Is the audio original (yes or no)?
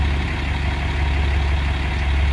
yes